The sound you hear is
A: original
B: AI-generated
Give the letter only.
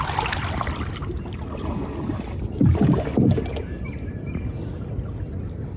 A